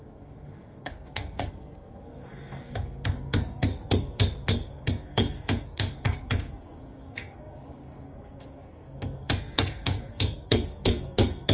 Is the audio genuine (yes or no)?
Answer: no